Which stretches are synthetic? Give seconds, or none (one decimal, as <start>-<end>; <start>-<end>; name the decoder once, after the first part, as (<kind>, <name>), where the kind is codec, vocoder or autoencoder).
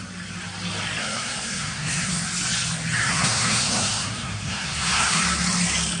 1.0-2.2 (codec, SNAC); 3.0-5.2